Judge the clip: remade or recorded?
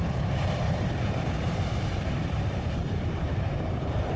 remade